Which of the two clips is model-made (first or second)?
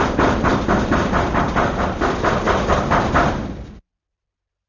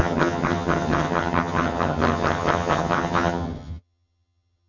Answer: second